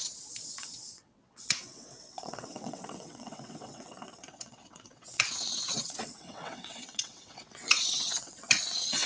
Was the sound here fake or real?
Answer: fake